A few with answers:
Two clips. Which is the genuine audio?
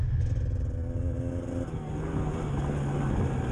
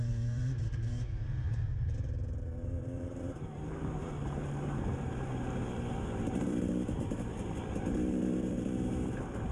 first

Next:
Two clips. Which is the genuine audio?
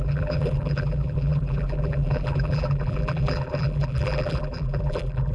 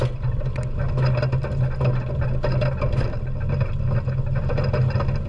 second